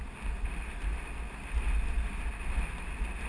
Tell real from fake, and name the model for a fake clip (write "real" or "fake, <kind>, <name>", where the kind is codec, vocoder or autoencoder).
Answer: real